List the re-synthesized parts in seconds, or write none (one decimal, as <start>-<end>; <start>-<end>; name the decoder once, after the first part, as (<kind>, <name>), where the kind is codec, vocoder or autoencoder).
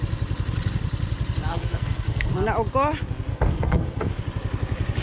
1.5-2.3 (codec, SNAC); 3.3-4.1